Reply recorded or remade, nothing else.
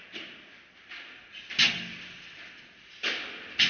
recorded